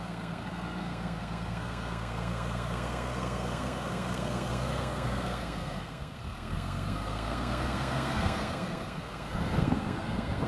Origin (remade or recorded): remade